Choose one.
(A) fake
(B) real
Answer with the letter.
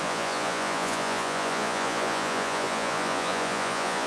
A